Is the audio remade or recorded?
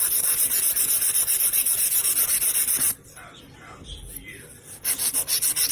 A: recorded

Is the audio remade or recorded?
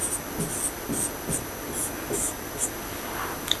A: recorded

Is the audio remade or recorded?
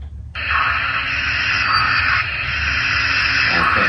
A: recorded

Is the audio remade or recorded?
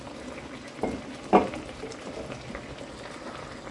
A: recorded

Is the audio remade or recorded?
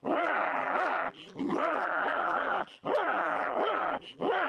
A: remade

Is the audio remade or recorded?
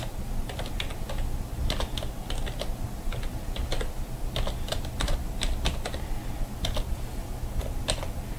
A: recorded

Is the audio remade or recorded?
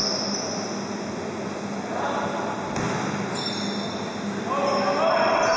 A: recorded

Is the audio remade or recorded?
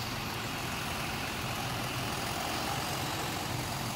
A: recorded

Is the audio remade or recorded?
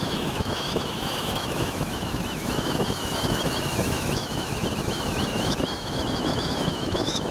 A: remade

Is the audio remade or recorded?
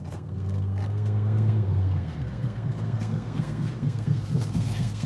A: remade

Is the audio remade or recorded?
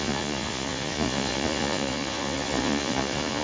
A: remade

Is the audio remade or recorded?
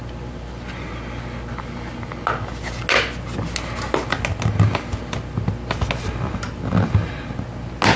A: recorded